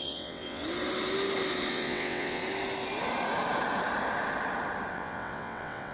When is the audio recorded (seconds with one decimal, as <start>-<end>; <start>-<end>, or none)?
0.6-1.7; 2.4-4.9